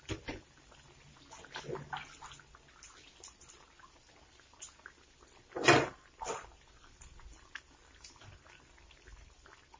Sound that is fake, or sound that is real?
real